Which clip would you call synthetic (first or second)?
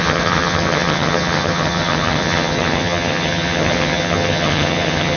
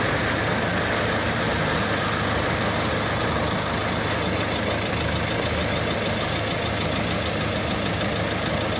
first